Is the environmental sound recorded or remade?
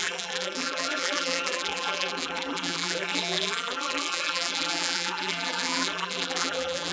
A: remade